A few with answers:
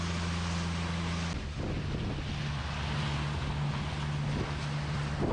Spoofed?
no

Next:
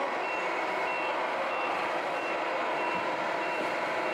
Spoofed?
no